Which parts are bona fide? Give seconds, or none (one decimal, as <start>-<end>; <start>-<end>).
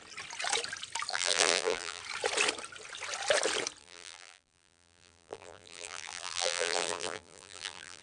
0.0-1.1; 2.0-3.8